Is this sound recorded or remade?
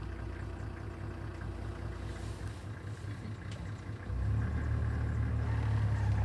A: recorded